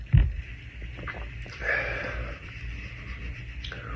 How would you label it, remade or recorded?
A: recorded